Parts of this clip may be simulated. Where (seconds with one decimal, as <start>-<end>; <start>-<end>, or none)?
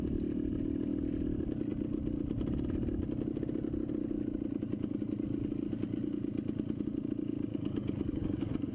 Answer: 7.5-8.7